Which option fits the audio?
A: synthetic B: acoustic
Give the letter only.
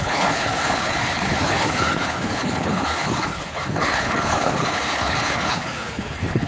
A